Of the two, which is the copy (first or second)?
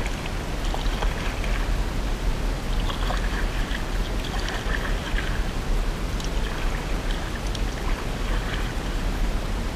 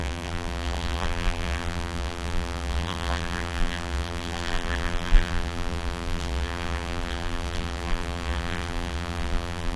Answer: second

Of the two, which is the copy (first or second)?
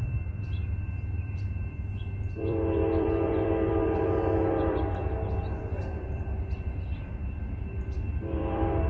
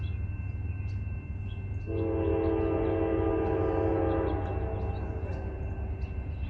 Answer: first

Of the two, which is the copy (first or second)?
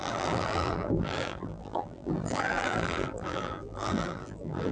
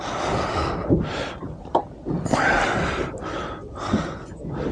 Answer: first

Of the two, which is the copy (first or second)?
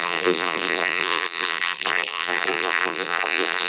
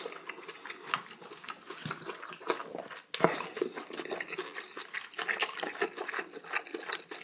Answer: first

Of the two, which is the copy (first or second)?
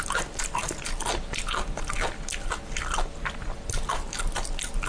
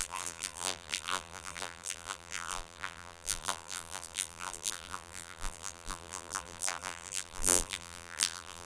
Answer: second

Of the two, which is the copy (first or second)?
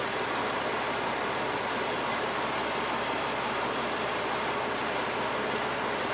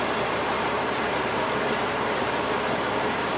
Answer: second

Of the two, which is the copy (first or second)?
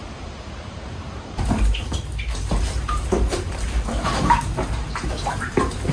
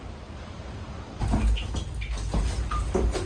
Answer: first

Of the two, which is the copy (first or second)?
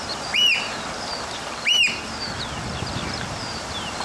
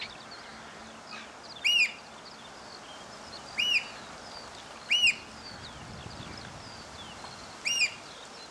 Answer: first